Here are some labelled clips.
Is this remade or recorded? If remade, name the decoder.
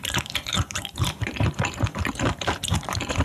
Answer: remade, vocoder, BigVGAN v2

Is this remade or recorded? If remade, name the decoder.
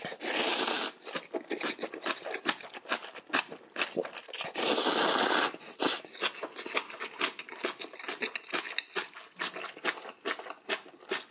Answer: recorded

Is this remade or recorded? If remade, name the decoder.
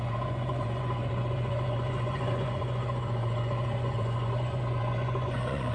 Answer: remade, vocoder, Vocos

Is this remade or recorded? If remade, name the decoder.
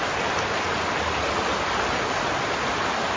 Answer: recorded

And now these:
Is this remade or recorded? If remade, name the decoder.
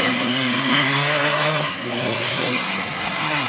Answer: remade, codec, SNAC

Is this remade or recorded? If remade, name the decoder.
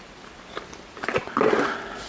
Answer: recorded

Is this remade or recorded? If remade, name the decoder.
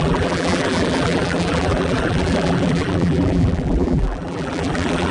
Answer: remade, vocoder, BigVGAN v2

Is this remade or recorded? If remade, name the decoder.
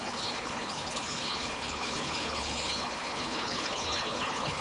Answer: remade, codec, HILCodec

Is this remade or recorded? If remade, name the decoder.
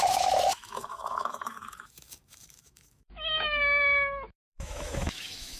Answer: remade, autoencoder, DAC-VAE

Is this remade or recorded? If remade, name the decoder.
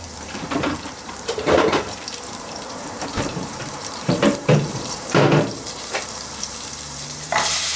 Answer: remade, vocoder, BigVGAN v2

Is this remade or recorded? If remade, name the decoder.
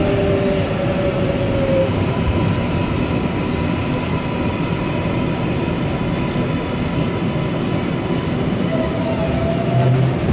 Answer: recorded